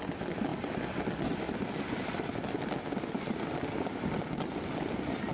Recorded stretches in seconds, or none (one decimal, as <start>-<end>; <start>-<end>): 0.0-5.3

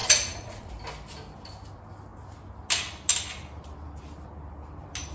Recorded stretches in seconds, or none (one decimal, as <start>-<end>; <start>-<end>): 0.7-5.1

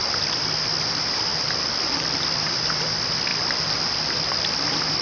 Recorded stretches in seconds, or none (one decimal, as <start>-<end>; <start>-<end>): 0.0-1.3; 2.2-3.3; 4.5-5.0

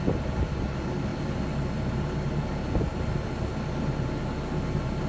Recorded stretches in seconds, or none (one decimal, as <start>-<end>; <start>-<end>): 0.0-5.1

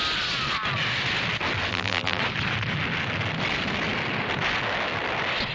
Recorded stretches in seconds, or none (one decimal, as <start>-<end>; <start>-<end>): 0.0-1.7; 2.2-5.5

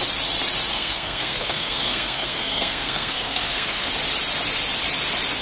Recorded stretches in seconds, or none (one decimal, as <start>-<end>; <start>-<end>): 0.0-0.7; 3.9-5.4